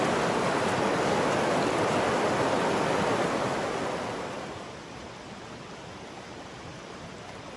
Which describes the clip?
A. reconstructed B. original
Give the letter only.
B